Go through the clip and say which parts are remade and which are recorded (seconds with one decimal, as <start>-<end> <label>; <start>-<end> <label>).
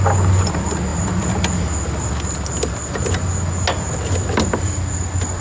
0.0-5.4 recorded